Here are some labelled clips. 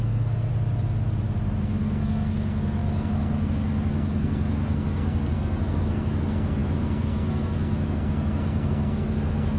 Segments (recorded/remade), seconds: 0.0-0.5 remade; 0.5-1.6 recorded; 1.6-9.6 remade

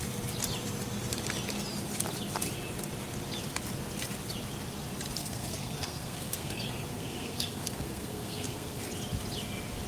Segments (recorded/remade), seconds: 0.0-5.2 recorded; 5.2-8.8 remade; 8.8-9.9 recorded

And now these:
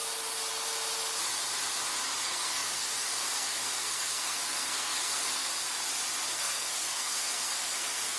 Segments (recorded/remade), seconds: 0.0-2.2 recorded; 2.2-5.5 remade; 5.5-6.3 recorded; 6.3-8.2 remade

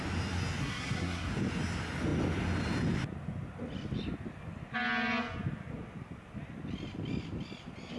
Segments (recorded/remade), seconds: 0.0-0.6 recorded; 0.6-1.3 remade; 1.3-8.0 recorded

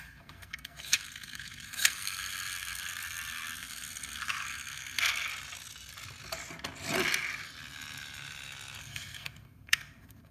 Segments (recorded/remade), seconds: 0.0-5.3 remade; 5.3-8.8 recorded; 8.8-10.3 remade

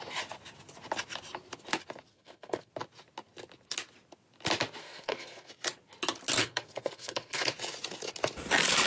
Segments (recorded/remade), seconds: 0.0-2.1 recorded; 2.1-2.7 remade; 2.7-4.8 recorded; 4.8-5.5 remade; 5.5-6.4 recorded; 6.4-7.5 remade; 7.5-8.9 recorded